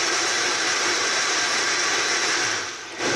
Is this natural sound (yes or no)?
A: no